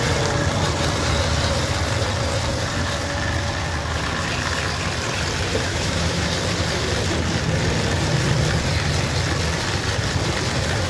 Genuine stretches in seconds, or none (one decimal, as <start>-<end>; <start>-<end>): 0.0-5.7; 6.3-10.9